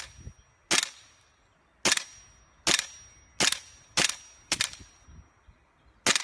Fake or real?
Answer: real